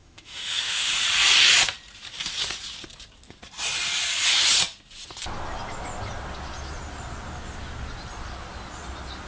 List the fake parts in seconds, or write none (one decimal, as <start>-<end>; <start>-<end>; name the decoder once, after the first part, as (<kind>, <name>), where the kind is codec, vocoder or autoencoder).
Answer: 0.0-0.9 (autoencoder, DAC-VAE)